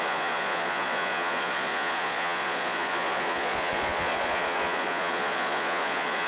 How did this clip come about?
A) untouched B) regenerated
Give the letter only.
B